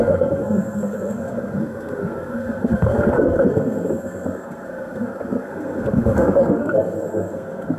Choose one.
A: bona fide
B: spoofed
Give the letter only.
B